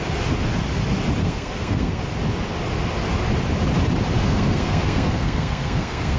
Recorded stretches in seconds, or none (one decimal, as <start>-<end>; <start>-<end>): 0.0-1.2; 2.0-4.2